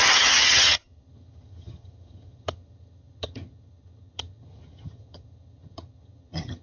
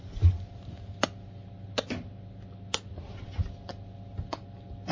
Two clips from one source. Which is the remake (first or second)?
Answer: first